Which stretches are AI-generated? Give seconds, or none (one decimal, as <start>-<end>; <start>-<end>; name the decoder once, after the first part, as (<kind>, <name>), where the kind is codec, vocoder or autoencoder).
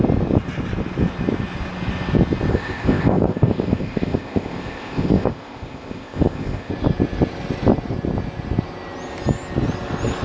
2.5-6.7 (codec, ZipCodec)